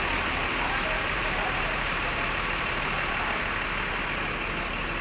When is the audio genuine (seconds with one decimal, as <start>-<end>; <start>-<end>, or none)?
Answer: 0.0-0.4; 3.4-5.0